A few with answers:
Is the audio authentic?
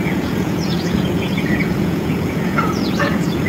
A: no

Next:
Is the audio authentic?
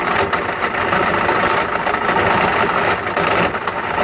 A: yes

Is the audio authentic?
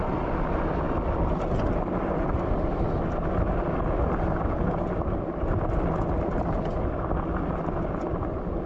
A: yes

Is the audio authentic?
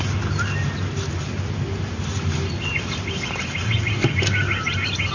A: yes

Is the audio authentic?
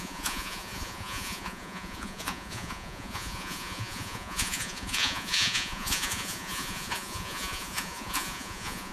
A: no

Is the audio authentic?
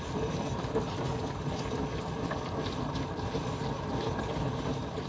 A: yes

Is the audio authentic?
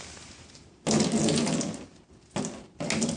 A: yes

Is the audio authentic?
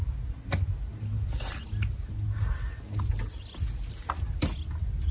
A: yes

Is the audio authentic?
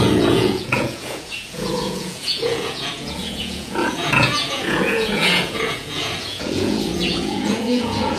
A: no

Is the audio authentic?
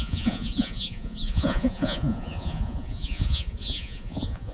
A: no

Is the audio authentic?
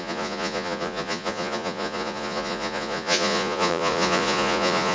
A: no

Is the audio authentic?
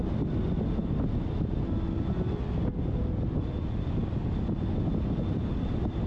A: yes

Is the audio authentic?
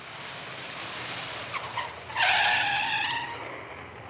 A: yes